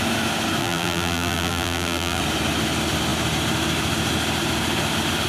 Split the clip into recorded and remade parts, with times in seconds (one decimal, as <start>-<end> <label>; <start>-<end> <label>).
0.0-0.6 recorded; 0.6-2.2 remade; 2.2-5.3 recorded